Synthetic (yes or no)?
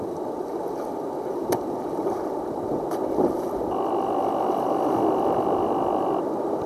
yes